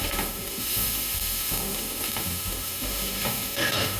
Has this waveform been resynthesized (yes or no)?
yes